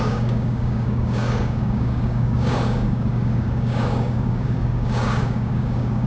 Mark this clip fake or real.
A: fake